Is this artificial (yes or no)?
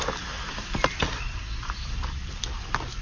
no